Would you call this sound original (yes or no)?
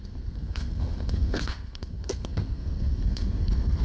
no